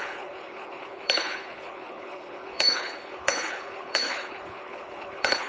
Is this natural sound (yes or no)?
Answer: no